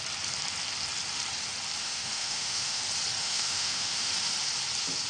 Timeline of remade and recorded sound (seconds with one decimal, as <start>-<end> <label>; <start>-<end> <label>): 0.0-1.8 recorded; 1.8-2.8 remade; 2.8-3.2 recorded; 3.2-4.1 remade; 4.1-5.1 recorded